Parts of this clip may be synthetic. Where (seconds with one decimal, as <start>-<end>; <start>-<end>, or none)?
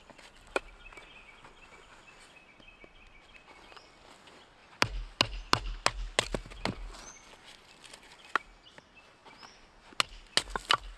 none